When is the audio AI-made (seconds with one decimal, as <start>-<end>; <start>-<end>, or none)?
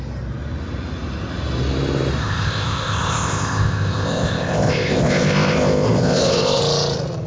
2.2-6.6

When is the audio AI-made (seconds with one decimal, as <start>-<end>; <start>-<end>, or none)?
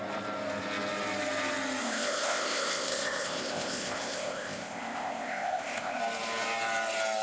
1.8-6.0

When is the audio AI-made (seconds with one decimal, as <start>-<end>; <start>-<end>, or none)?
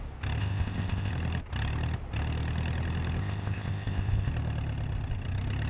0.4-1.1; 3.2-4.3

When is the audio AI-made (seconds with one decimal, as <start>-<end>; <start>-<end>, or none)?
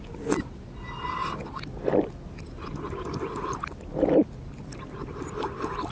none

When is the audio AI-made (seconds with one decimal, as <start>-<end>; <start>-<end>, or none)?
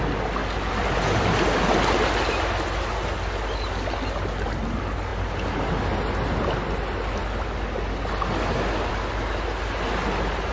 none